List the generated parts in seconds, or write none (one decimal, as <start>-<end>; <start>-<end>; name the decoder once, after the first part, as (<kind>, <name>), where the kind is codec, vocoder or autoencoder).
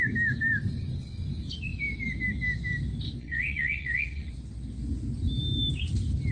3.2-4.3 (vocoder, WaveNeXt)